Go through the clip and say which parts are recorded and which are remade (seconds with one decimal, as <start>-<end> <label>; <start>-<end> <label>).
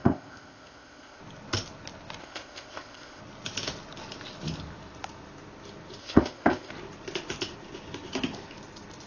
0.0-1.2 remade; 1.2-2.2 recorded; 2.2-3.2 remade; 3.2-6.0 recorded; 6.0-6.7 remade; 6.7-9.1 recorded